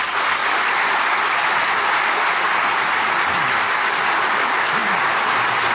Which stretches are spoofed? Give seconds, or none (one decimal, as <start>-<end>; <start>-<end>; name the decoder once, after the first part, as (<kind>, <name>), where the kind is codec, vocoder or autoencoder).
0.4-3.7 (vocoder, BigVGAN v2)